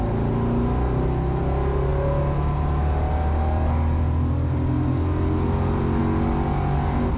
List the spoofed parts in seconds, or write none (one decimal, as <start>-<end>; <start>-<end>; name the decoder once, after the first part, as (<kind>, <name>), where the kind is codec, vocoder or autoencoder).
none